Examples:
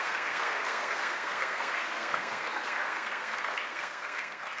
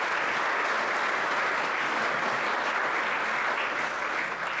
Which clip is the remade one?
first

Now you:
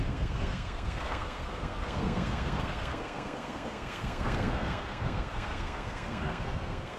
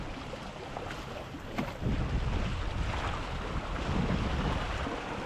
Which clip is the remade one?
first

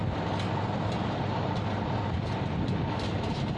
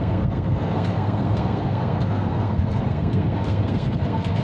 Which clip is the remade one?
second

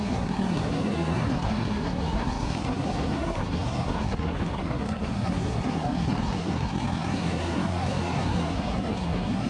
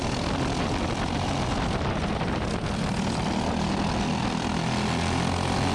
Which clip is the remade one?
first